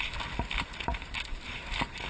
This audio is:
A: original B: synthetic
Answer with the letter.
A